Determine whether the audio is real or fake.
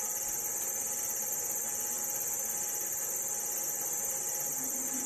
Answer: real